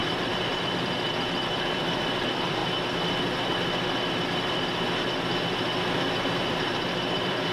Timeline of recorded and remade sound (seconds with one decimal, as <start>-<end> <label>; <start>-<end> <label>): 0.0-2.6 remade; 2.6-6.2 recorded; 6.2-7.5 remade